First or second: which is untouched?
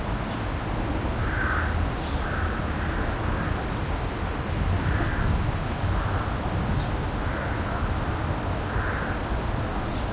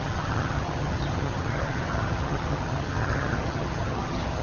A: first